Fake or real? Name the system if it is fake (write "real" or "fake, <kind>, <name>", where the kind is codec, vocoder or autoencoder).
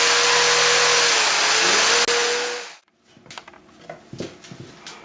real